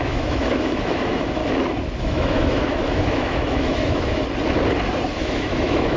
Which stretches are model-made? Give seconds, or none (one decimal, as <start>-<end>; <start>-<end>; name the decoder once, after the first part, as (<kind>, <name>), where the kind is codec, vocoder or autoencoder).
0.0-1.4 (autoencoder, DAC-VAE); 2.0-4.2; 5.2-6.0